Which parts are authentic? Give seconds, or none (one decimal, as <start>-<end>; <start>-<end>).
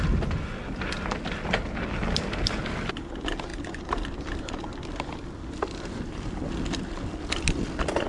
0.0-8.1